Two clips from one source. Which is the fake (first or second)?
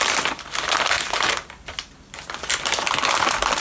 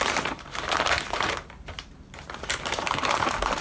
second